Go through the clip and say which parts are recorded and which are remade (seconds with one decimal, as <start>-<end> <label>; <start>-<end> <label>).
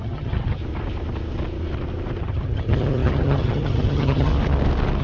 0.0-0.6 remade; 0.6-2.2 recorded; 2.2-4.3 remade; 4.3-5.0 recorded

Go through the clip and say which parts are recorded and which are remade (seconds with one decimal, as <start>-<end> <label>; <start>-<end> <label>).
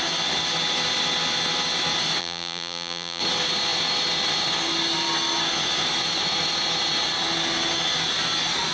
0.0-2.2 recorded; 2.2-3.2 remade; 3.2-8.7 recorded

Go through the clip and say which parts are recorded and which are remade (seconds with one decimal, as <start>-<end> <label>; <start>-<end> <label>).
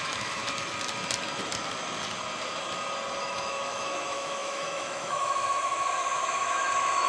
0.0-0.4 remade; 0.4-3.2 recorded; 3.2-7.1 remade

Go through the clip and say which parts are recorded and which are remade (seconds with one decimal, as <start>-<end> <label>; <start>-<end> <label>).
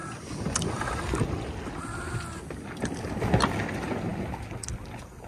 0.0-5.3 recorded